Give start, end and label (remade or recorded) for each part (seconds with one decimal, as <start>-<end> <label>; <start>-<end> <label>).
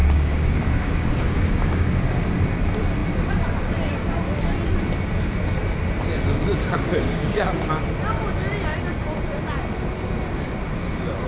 0.0-2.2 remade; 2.2-6.6 recorded; 6.6-7.7 remade; 7.7-11.3 recorded